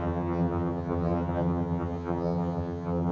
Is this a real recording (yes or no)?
no